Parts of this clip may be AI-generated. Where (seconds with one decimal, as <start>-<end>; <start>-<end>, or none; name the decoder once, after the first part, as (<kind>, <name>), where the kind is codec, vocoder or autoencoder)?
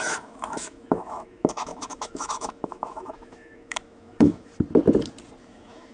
0.0-4.5 (autoencoder, DAC-VAE); 5.4-5.9